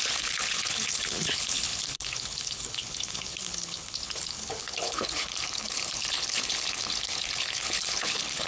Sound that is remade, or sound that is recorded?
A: remade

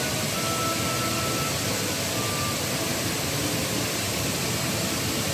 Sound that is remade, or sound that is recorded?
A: recorded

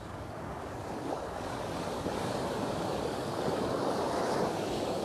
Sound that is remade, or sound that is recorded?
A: remade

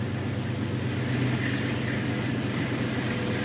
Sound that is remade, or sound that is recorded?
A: recorded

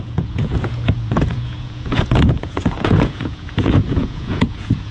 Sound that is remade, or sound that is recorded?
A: remade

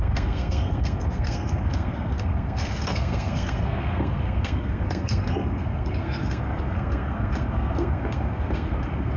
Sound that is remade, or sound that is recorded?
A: remade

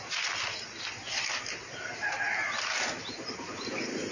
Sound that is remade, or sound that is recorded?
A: recorded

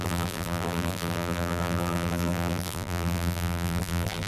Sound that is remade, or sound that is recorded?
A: remade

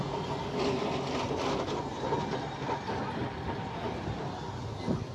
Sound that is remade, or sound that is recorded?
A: recorded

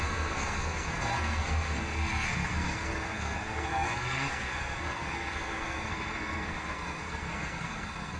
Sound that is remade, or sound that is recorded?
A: remade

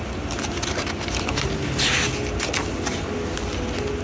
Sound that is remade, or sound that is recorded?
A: recorded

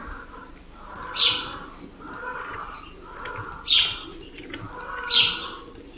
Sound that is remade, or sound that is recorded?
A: recorded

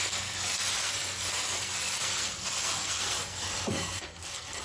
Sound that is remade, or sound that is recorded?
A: remade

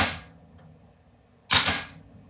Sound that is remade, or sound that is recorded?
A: recorded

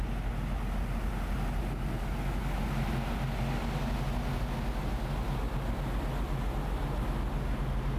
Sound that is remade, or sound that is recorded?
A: recorded